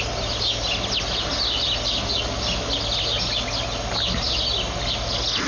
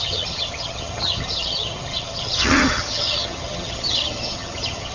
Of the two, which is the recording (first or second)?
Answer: first